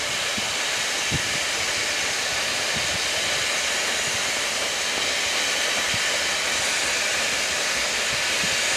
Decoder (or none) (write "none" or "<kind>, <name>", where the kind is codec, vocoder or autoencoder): none